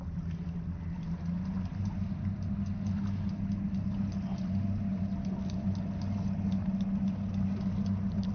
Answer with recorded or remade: recorded